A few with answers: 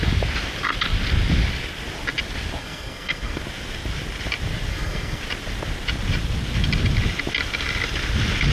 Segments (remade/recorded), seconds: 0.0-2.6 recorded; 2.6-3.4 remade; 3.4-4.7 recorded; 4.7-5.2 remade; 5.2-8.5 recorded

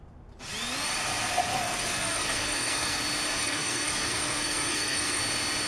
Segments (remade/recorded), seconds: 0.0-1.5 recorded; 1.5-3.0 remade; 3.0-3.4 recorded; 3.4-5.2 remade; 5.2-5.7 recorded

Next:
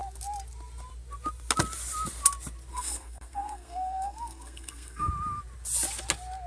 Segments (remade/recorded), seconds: 0.0-2.7 recorded; 2.7-5.1 remade; 5.1-6.5 recorded

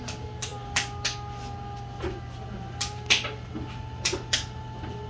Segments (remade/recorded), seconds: 0.0-5.1 recorded

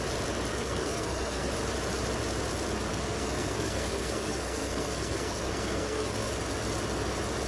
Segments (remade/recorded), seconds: 0.0-0.5 recorded; 0.5-1.5 remade; 1.5-2.9 recorded; 2.9-6.3 remade; 6.3-7.5 recorded

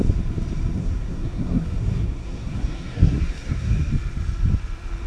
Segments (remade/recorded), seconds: 0.0-0.8 recorded; 0.8-3.9 remade; 3.9-5.1 recorded

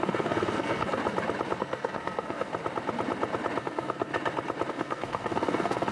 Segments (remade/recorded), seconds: 0.0-1.0 remade; 1.0-1.6 recorded; 1.6-2.5 remade; 2.5-3.6 recorded; 3.6-4.1 remade; 4.1-4.7 recorded; 4.7-5.9 remade